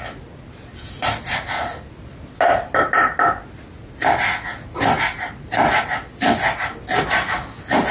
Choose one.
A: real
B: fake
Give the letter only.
A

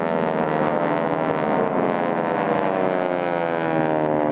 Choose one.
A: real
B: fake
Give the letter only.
A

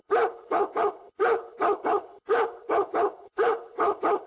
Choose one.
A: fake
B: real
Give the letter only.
A